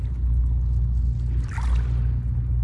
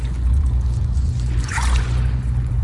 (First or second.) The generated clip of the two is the second